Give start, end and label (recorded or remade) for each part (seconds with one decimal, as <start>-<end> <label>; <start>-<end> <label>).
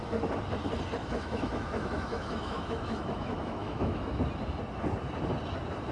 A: 0.0-1.0 recorded; 1.0-4.2 remade; 4.2-5.9 recorded